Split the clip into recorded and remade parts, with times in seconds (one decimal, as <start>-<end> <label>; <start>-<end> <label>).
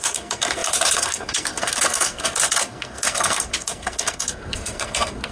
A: 0.0-5.3 remade